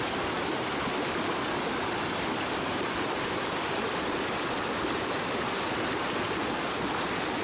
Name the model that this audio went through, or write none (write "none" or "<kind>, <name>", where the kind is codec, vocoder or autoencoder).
none